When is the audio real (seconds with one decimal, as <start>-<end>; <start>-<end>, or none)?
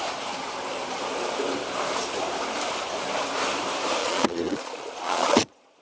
0.0-4.0